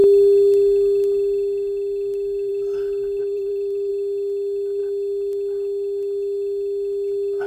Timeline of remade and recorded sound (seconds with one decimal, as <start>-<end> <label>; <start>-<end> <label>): 0.0-3.2 recorded; 3.2-3.9 remade; 3.9-7.5 recorded